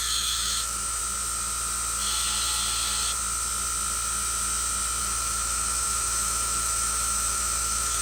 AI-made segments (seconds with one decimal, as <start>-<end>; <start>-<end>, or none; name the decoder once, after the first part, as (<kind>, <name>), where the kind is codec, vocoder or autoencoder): 0.0-1.0 (autoencoder, DAC-VAE); 5.0-8.0